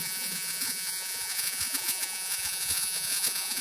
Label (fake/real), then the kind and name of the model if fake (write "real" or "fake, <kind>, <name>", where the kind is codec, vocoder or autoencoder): fake, vocoder, Vocos